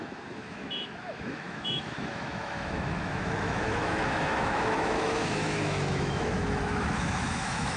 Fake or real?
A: fake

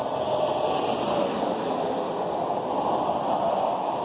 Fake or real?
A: real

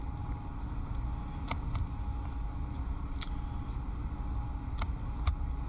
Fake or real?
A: real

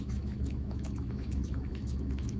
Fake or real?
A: fake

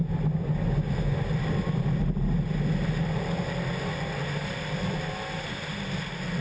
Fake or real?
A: real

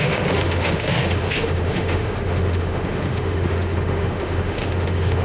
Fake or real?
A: fake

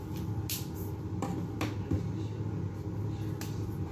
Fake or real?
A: real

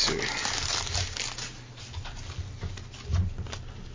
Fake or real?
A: real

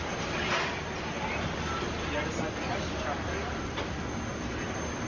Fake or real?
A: real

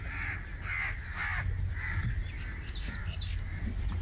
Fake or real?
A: real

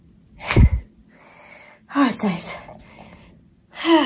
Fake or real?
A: real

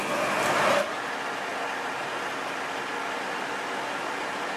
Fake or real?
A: real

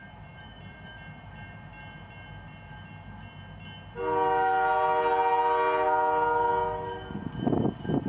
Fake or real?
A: real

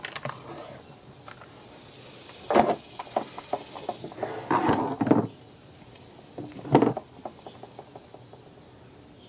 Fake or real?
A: real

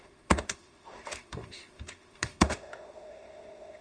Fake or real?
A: fake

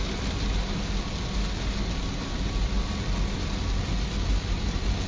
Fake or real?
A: real